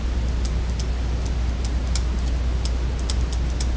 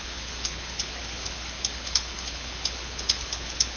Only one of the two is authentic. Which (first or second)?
first